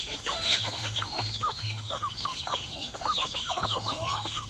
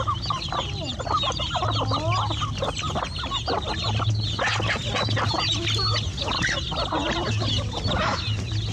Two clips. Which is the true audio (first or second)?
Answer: second